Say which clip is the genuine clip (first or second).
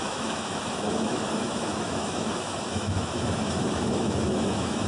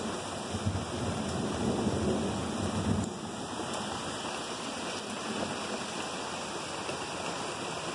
second